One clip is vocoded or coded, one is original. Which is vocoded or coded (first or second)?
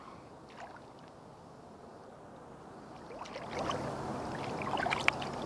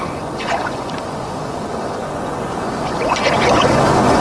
second